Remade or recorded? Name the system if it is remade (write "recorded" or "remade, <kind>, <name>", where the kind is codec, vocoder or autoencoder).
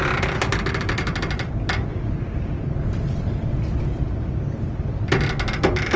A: recorded